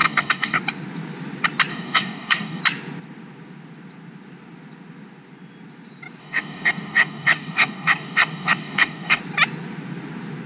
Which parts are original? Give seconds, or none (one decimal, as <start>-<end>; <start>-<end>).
0.6-1.7; 2.6-6.2; 9.2-10.5